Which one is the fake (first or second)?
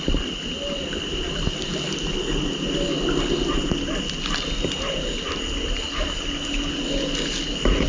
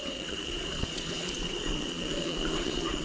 second